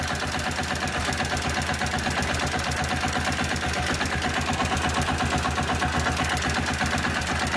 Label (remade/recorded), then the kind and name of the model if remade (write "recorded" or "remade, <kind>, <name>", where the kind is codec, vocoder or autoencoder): recorded